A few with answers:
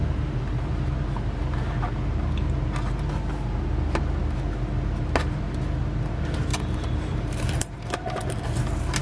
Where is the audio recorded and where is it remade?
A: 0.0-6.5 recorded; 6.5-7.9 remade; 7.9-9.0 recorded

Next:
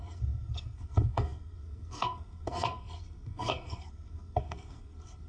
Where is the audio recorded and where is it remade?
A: 0.0-5.3 remade

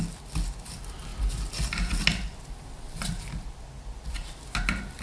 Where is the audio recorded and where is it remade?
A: 0.0-5.0 recorded

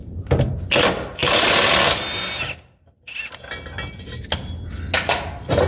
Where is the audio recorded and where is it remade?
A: 0.0-0.5 remade; 0.5-1.2 recorded; 1.2-1.7 remade; 1.7-5.7 recorded

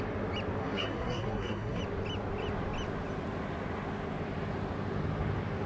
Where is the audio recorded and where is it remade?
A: 0.0-0.6 recorded; 0.6-1.8 remade; 1.8-5.7 recorded

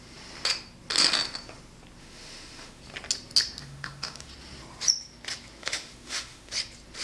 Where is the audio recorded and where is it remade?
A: 0.0-2.0 recorded; 2.0-2.8 remade; 2.8-3.6 recorded; 3.6-4.3 remade; 4.3-5.6 recorded; 5.6-6.5 remade; 6.5-7.0 recorded

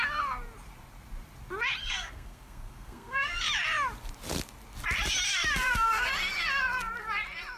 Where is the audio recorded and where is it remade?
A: 0.0-1.8 recorded; 1.8-3.4 remade; 3.4-5.3 recorded; 5.3-6.1 remade; 6.1-7.6 recorded

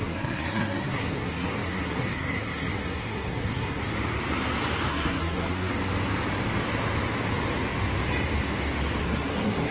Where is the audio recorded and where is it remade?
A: 0.0-3.8 remade; 3.8-4.9 recorded; 4.9-5.7 remade; 5.7-9.0 recorded; 9.0-9.7 remade